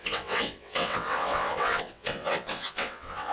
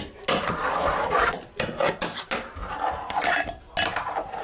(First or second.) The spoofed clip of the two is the first